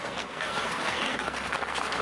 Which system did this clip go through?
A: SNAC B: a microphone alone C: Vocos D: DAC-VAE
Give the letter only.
A